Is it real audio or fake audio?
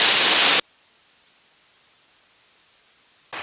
real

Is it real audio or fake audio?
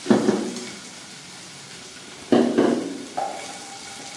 real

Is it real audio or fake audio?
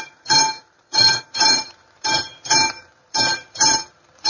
fake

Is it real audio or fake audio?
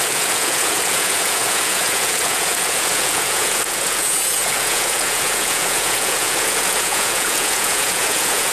fake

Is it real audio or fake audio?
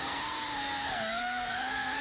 fake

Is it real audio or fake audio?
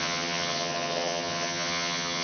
fake